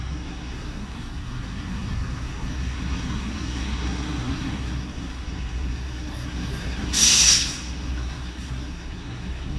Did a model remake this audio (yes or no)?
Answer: yes